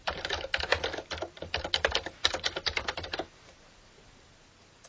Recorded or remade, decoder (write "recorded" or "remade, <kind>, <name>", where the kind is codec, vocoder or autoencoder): remade, vocoder, BigVGAN v2